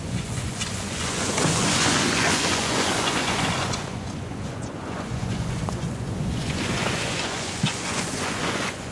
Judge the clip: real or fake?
fake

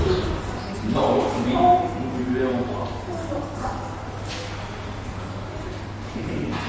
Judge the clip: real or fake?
real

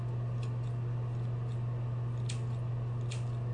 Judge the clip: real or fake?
real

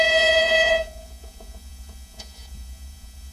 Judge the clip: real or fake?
fake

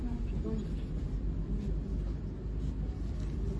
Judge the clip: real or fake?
real